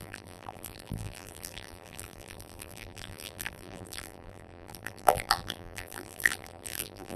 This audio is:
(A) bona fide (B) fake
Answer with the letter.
B